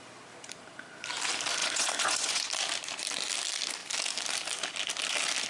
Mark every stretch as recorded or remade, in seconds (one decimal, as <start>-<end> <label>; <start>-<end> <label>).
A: 0.0-1.6 recorded; 1.6-2.5 remade; 2.5-5.5 recorded